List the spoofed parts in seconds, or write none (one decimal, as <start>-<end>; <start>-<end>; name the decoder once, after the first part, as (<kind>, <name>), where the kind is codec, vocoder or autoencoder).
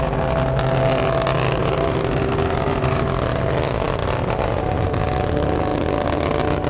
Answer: 1.6-3.1 (vocoder, BigVGAN v2); 4.0-5.0